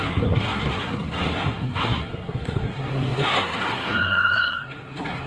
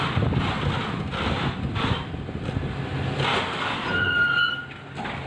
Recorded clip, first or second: second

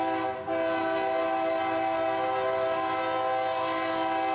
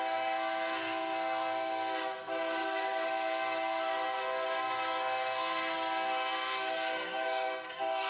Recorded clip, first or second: first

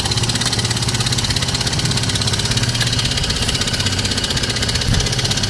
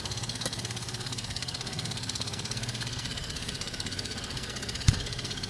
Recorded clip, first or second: first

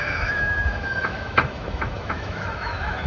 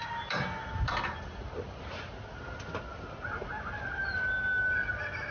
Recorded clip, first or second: second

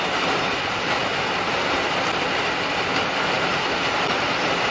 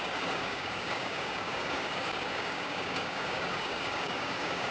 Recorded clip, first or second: first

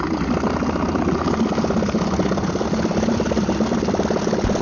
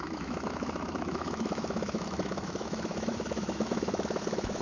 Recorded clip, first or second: first